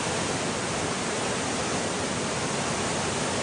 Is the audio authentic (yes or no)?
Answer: yes